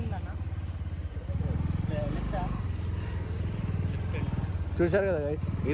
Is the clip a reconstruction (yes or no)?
no